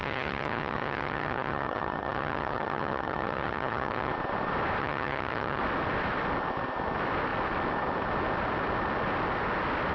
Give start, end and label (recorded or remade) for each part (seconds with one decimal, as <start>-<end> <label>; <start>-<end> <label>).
0.0-4.1 remade; 4.1-4.8 recorded; 4.8-5.6 remade; 5.6-9.9 recorded